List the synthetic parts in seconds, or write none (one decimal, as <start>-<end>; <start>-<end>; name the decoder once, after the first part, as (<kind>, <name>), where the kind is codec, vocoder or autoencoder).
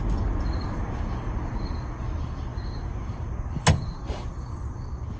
none